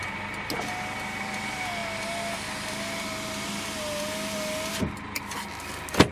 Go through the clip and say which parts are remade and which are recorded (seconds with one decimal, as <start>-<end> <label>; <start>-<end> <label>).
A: 0.0-6.1 recorded